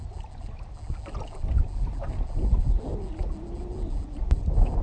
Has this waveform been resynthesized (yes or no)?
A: no